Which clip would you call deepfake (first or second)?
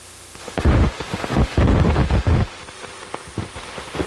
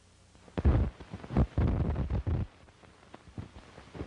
first